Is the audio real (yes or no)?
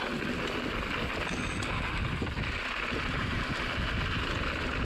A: yes